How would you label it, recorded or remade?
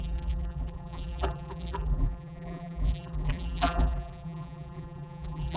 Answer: remade